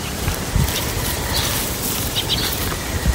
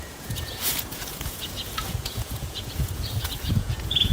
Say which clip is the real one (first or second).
first